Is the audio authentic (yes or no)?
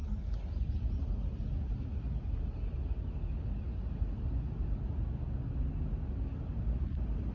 yes